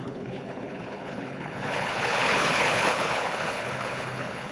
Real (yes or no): no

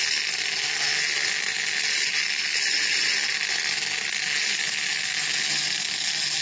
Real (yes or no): yes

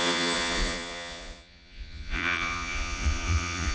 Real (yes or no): no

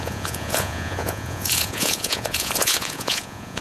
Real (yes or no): no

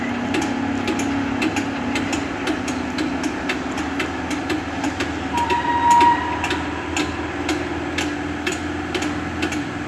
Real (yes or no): yes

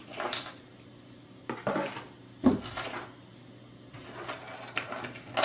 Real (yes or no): yes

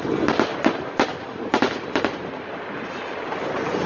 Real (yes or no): no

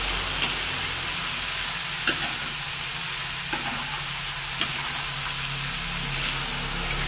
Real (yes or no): yes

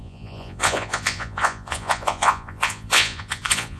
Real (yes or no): no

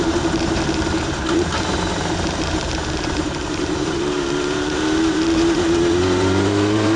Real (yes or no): no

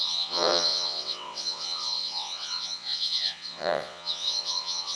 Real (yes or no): no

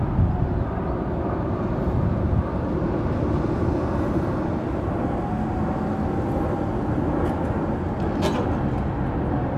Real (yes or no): yes